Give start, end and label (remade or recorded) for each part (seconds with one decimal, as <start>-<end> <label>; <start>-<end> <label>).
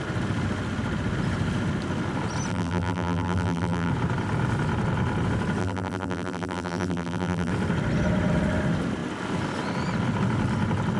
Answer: 0.0-2.5 recorded; 2.5-3.9 remade; 3.9-5.6 recorded; 5.6-7.5 remade; 7.5-11.0 recorded